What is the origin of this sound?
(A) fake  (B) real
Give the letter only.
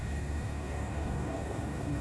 A